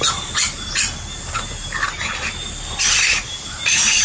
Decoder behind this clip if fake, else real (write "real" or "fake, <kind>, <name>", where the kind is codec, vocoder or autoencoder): real